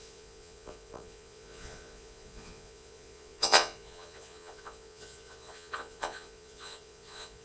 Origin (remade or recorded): remade